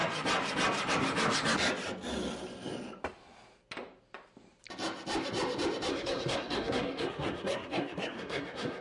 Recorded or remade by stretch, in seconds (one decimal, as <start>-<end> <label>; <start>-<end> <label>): 0.0-5.9 recorded; 5.9-8.8 remade